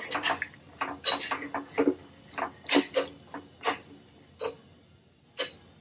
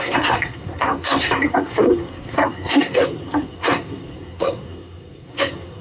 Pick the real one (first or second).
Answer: first